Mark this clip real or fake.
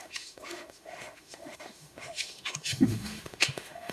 fake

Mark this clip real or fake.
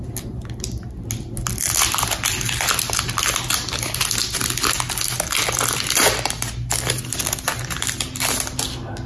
real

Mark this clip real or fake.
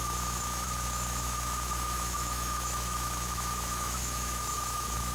fake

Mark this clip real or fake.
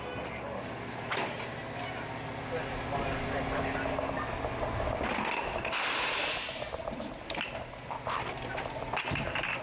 real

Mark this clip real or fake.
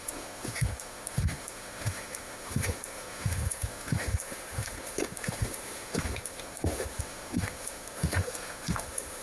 fake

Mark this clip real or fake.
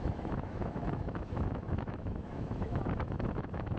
fake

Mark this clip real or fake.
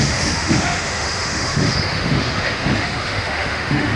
fake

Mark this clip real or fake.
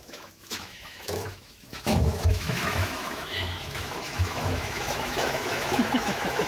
fake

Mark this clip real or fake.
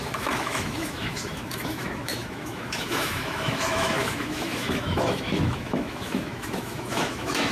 fake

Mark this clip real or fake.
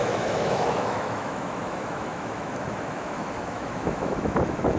fake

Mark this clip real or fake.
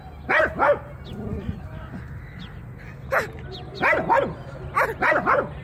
real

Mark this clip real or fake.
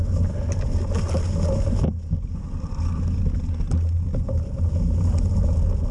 real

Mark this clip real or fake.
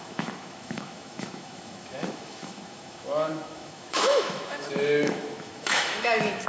fake